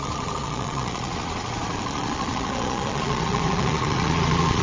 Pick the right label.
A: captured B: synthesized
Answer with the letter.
B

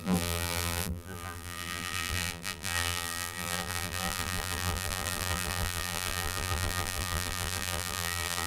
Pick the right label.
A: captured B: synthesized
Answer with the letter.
B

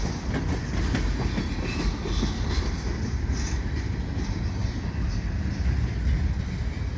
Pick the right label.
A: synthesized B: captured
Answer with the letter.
B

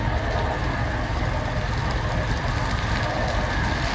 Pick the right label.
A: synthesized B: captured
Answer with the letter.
B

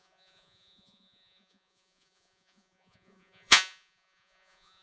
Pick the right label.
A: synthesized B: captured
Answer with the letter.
A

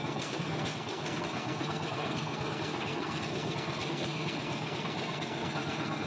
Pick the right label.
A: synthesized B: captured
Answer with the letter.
A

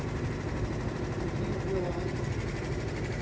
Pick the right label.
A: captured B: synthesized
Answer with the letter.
A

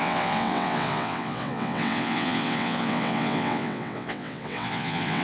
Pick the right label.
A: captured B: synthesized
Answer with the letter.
B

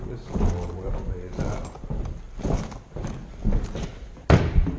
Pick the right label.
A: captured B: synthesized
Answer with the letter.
A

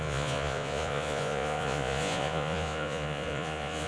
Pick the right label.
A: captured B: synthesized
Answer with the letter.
B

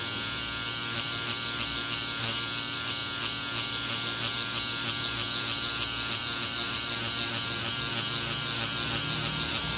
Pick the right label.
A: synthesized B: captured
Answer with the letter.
B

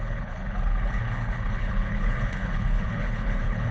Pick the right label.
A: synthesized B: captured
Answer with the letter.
A